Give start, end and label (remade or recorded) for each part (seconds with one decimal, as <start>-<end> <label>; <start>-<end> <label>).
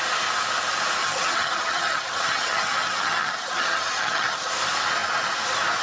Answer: 0.0-1.0 recorded; 1.0-4.5 remade; 4.5-5.8 recorded